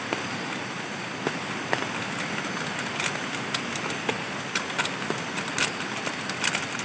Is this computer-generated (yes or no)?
no